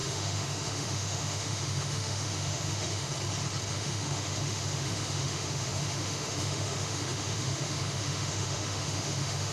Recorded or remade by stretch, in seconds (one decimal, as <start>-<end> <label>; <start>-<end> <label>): 0.0-3.1 remade; 3.1-3.7 recorded; 3.7-9.5 remade